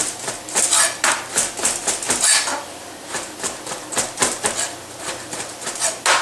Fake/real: real